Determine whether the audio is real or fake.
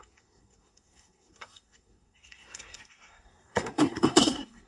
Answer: fake